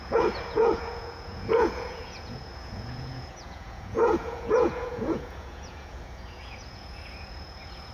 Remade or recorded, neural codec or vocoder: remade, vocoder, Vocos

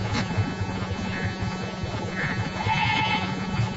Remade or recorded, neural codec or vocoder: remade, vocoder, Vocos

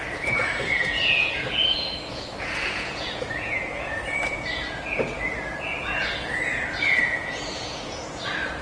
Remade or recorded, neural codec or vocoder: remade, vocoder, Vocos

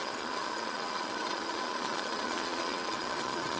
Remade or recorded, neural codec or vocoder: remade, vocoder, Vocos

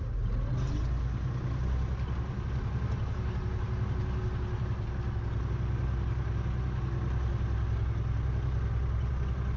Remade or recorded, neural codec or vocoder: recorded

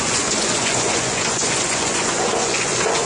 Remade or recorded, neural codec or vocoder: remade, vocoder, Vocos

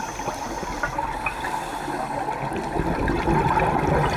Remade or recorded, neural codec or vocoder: recorded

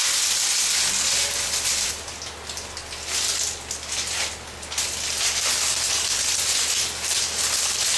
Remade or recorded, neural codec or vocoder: recorded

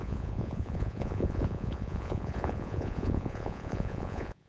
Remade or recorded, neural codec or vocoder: remade, vocoder, Vocos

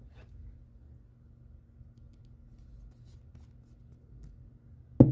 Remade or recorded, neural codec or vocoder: recorded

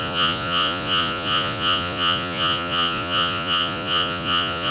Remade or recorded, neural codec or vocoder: remade, vocoder, Vocos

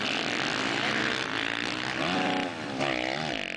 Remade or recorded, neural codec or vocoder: recorded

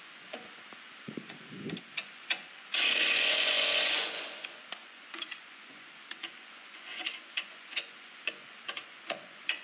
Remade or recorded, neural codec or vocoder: remade, vocoder, Vocos